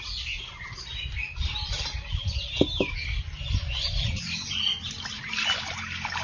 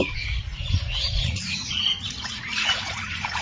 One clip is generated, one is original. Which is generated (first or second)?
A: second